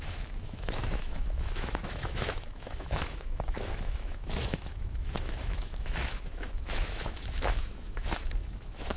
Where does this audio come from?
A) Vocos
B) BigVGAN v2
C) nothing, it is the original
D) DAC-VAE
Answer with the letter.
D